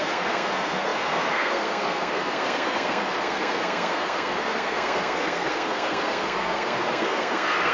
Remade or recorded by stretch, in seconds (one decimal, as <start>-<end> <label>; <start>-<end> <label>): 0.0-7.7 remade